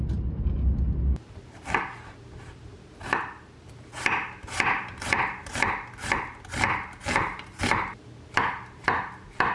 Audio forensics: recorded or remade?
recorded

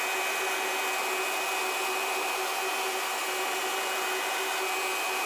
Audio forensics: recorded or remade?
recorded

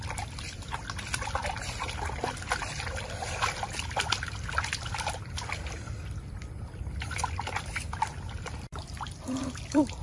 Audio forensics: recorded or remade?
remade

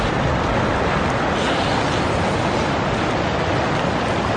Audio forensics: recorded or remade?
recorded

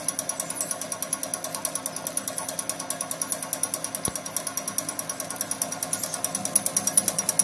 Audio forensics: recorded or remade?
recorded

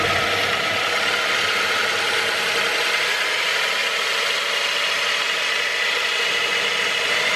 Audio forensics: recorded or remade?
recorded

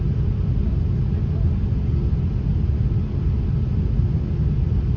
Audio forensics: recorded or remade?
recorded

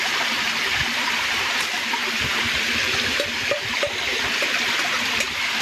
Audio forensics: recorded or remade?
remade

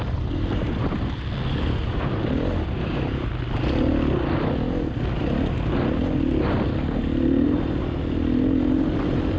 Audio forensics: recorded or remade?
recorded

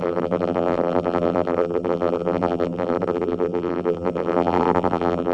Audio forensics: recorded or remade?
remade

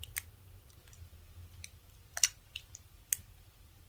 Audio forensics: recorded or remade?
remade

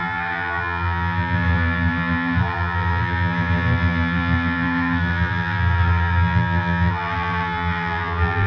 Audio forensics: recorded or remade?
remade